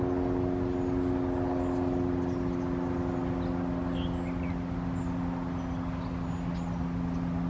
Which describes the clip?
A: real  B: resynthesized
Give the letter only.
A